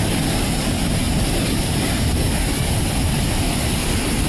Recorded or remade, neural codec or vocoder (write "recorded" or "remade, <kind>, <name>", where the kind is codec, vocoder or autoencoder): recorded